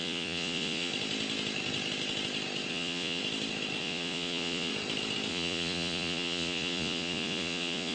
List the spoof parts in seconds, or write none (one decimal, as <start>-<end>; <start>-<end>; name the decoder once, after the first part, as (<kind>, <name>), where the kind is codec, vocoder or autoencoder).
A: 0.0-0.9 (vocoder, Vocos); 2.7-3.2; 3.8-4.7; 5.3-7.9